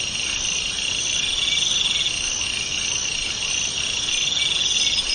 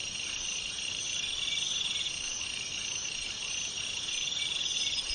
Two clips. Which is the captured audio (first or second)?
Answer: first